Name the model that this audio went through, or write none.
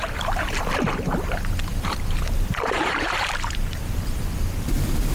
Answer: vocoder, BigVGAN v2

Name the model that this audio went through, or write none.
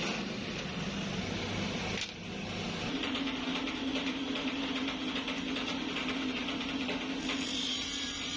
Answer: none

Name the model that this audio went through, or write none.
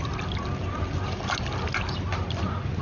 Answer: vocoder, BigVGAN v2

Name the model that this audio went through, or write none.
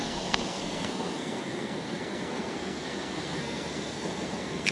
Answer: codec, SNAC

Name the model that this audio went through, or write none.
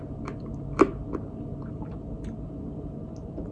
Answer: none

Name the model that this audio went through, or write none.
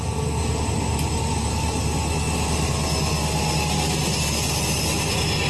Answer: none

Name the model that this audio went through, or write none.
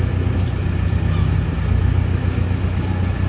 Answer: none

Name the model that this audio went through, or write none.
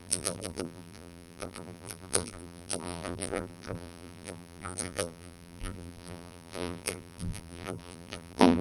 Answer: vocoder, BigVGAN v2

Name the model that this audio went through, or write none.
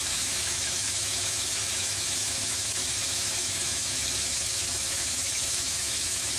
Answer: autoencoder, DAC-VAE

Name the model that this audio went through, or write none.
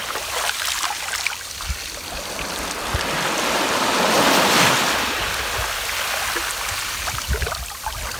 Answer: none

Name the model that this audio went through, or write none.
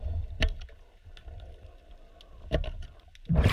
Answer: none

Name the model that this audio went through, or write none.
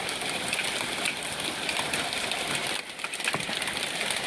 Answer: none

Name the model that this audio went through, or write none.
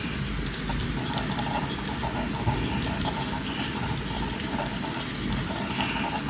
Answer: none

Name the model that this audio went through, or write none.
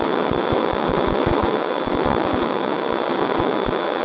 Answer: vocoder, WaveNeXt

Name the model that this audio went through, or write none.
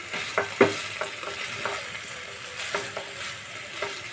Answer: none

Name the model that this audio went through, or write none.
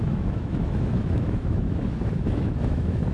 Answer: autoencoder, DAC-VAE